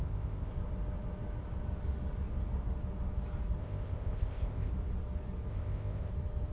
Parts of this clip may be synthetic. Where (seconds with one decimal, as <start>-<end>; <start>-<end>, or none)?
0.0-0.5; 3.6-4.7; 5.5-6.1